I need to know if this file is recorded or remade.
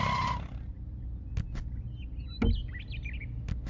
recorded